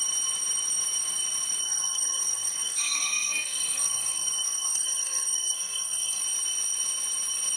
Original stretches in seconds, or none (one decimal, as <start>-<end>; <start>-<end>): 0.0-1.6; 6.2-7.6